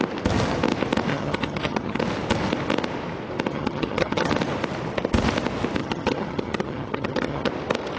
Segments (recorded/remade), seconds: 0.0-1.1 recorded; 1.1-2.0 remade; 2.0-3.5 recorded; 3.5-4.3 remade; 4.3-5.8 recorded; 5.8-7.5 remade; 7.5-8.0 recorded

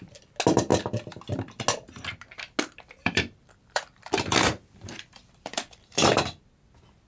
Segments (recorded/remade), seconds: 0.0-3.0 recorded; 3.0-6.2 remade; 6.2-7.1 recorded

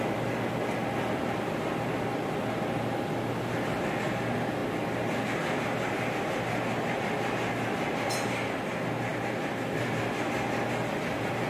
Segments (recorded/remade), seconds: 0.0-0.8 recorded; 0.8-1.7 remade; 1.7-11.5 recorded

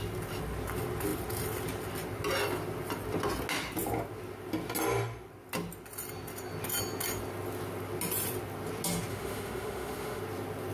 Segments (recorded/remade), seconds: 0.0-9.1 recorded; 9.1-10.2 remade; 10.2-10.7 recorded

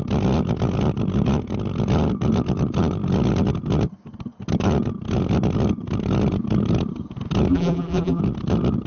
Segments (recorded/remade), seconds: 0.0-7.5 recorded; 7.5-8.2 remade; 8.2-8.9 recorded